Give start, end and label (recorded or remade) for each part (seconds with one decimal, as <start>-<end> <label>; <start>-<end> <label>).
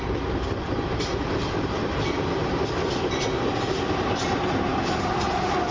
0.0-5.7 recorded